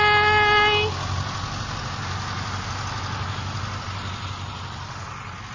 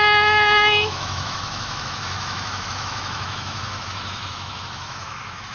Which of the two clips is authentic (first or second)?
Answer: first